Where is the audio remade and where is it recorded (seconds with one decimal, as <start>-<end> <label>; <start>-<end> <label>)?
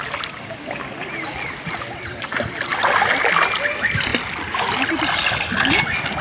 0.0-6.2 recorded